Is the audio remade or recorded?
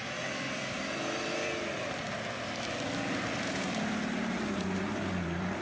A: remade